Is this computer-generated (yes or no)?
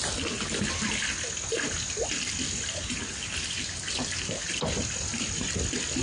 no